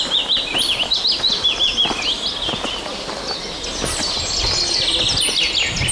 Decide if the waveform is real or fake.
real